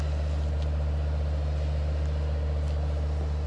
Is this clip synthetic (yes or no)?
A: no